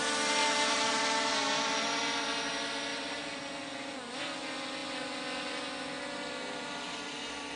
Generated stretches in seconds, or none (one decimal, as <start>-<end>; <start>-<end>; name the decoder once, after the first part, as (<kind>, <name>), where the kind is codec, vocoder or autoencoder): 0.4-1.0 (vocoder, BigVGAN v2); 2.9-3.9